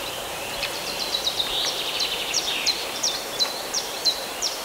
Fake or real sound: fake